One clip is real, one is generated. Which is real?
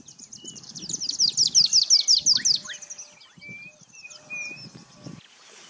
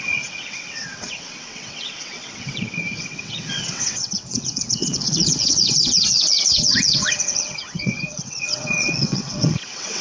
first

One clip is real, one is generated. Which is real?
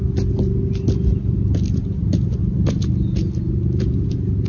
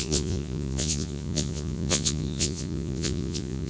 first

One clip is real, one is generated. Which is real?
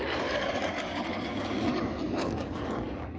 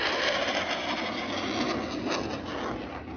second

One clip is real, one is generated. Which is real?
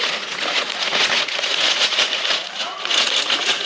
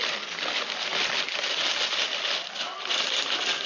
second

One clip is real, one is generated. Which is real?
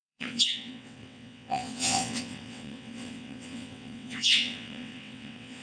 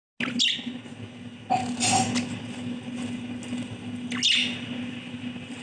second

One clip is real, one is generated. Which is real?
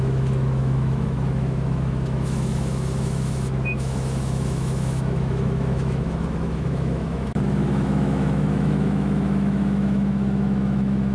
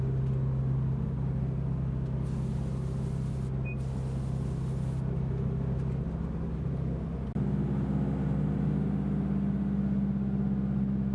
second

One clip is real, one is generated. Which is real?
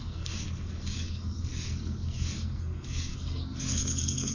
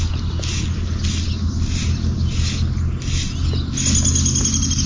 second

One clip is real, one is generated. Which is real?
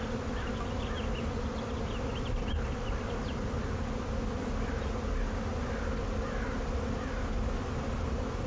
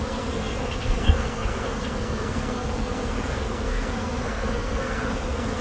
first